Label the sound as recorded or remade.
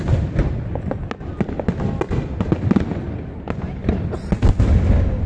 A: recorded